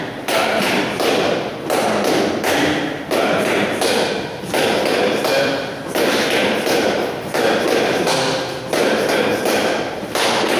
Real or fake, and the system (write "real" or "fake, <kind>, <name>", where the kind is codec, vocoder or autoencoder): fake, vocoder, BigVGAN v2